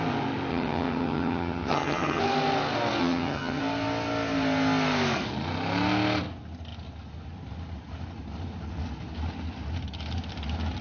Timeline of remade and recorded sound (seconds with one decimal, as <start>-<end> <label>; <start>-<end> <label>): 0.0-0.5 recorded; 0.5-2.2 remade; 2.2-3.0 recorded; 3.0-3.6 remade; 3.6-10.8 recorded